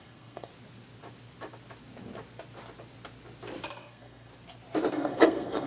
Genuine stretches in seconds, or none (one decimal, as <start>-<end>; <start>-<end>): 0.5-3.7; 4.3-4.9